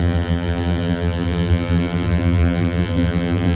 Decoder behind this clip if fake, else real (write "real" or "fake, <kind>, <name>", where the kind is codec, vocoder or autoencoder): fake, vocoder, BigVGAN v2